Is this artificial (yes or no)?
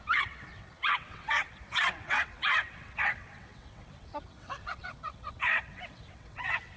yes